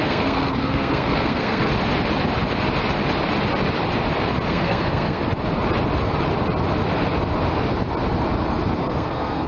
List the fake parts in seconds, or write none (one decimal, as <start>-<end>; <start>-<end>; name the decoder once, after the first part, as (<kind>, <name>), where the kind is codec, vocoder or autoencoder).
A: 0.0-1.7 (codec, SNAC); 4.5-5.2; 8.8-9.5